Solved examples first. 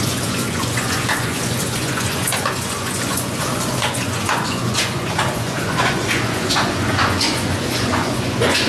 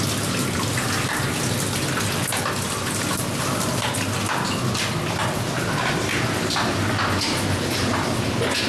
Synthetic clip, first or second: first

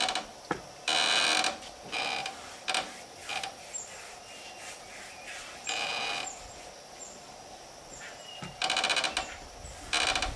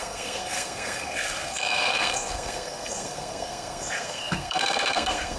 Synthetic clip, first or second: second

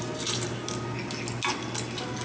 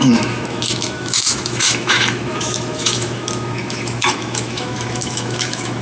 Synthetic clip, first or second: second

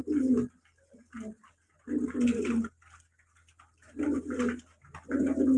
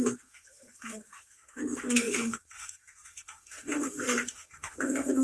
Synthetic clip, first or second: second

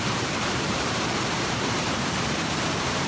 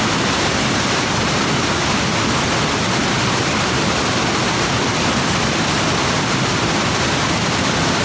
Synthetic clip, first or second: first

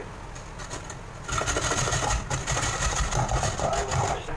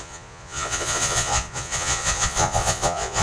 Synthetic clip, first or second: second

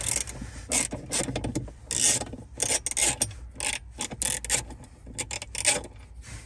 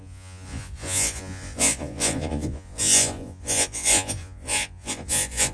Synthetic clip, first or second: second